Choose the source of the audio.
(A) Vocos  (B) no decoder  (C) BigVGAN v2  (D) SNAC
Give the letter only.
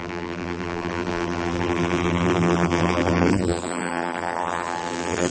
C